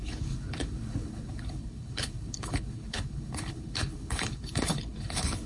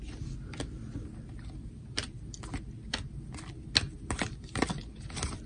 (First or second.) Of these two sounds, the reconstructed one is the first